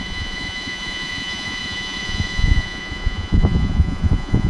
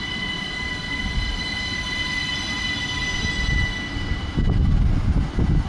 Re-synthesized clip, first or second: first